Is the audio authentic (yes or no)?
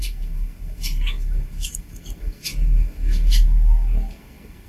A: no